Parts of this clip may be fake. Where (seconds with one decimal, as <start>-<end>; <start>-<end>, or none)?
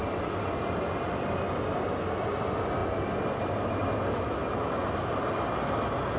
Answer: none